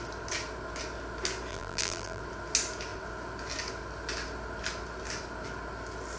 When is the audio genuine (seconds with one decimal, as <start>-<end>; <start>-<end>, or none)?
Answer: 0.0-1.5; 2.2-6.2